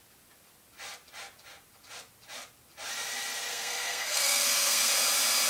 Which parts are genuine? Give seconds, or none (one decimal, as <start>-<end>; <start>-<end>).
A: 0.0-3.5; 4.9-5.5